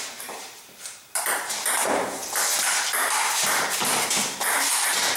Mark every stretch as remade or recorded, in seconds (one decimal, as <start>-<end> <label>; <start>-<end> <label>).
0.0-2.2 remade; 2.2-3.2 recorded; 3.2-5.2 remade